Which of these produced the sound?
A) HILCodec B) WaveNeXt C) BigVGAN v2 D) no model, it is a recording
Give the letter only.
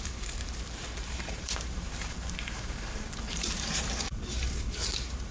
C